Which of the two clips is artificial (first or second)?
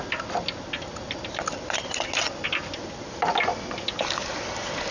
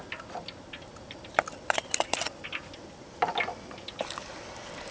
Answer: second